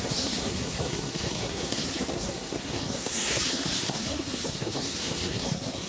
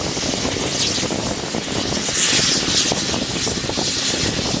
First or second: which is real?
second